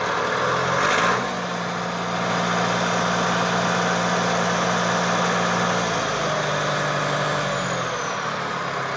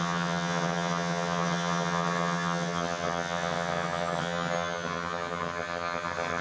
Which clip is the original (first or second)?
first